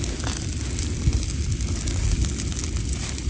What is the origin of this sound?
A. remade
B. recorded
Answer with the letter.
B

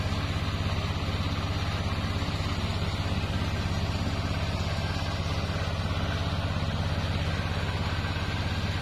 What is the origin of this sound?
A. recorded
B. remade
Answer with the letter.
A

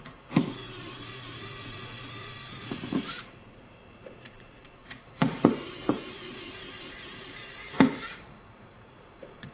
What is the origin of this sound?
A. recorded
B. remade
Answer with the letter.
B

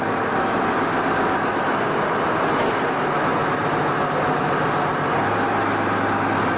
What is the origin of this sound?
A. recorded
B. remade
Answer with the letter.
A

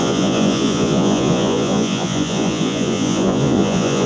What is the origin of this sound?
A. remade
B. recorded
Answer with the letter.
A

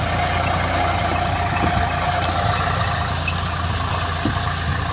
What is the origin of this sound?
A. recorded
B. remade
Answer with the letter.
A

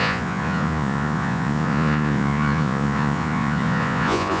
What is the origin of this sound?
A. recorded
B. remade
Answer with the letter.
B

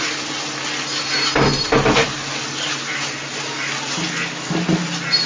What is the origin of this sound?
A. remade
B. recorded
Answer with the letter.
B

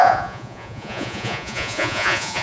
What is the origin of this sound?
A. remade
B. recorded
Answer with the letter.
A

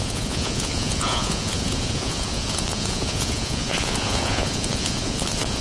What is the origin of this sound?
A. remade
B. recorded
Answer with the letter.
A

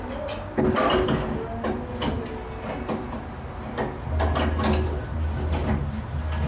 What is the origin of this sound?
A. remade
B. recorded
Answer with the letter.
B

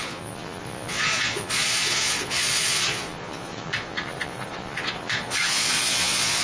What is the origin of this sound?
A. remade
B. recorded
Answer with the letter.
A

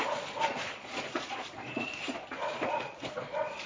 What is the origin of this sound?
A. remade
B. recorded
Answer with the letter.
A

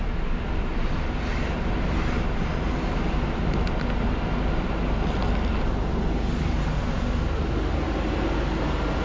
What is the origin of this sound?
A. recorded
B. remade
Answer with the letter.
A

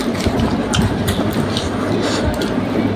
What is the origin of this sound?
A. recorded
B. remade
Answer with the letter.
A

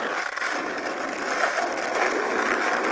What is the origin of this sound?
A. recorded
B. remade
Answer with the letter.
A